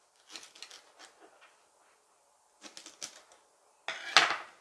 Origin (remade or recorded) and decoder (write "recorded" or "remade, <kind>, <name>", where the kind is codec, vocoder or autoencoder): recorded